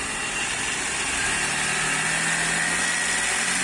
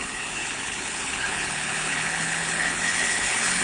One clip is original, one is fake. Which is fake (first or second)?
second